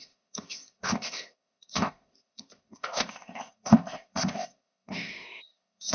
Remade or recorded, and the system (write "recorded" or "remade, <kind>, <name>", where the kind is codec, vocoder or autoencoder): remade, codec, ZipCodec